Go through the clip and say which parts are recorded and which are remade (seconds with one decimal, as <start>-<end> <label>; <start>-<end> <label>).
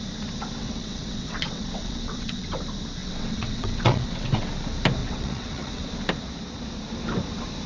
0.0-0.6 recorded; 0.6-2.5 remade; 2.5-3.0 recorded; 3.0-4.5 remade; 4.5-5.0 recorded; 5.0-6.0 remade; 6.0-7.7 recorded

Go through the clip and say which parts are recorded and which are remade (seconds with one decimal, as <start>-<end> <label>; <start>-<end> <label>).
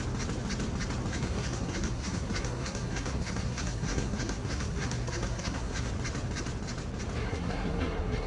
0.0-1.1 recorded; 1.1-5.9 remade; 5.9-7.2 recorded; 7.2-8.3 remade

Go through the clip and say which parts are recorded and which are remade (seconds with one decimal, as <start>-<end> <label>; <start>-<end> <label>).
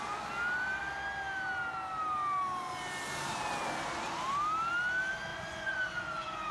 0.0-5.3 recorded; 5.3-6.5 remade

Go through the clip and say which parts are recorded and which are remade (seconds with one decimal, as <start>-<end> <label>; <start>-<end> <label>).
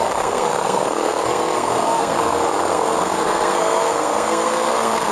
0.0-5.1 remade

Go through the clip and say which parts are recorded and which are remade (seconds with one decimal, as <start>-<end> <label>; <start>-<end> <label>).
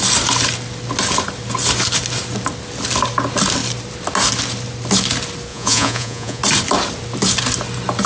0.0-5.5 recorded; 5.5-6.4 remade; 6.4-8.1 recorded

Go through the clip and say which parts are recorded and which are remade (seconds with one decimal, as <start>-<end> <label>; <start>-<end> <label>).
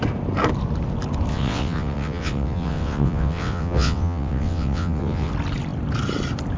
0.0-1.3 recorded; 1.3-5.3 remade; 5.3-6.6 recorded